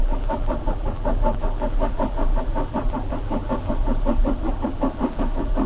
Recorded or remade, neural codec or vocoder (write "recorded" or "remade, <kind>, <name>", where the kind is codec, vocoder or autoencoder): remade, vocoder, BigVGAN v2